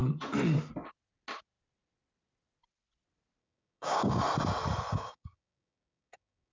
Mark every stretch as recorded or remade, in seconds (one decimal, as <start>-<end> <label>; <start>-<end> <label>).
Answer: 0.0-3.4 recorded; 3.4-4.2 remade; 4.2-4.9 recorded; 4.9-6.5 remade